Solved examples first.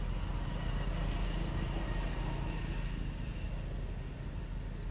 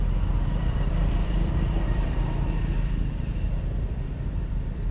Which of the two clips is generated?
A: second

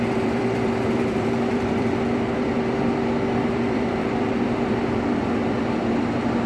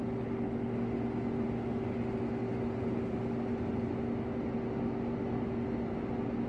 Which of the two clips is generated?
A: first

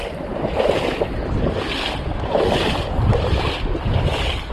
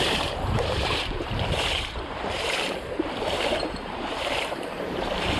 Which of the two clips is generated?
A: second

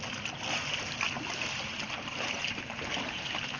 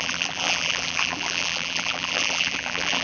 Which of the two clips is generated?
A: second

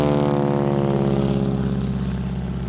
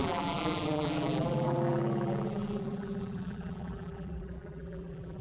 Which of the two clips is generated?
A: second